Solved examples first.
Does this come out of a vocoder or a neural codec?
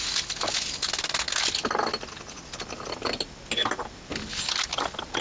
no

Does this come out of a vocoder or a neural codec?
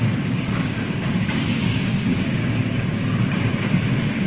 yes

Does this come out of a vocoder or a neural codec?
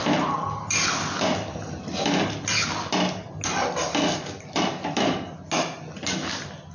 no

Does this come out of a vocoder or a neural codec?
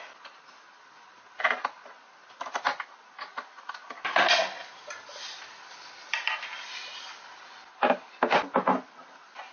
no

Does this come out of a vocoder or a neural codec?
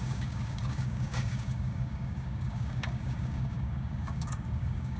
yes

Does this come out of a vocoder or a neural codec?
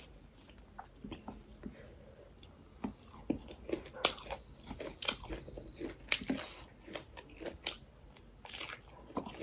no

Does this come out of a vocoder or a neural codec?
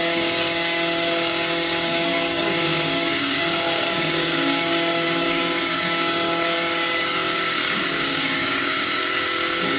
yes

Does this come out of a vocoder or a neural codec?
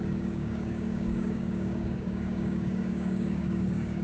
yes